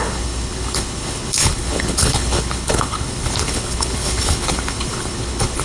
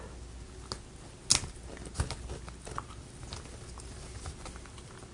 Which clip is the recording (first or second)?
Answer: second